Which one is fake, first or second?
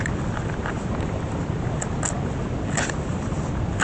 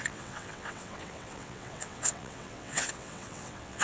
second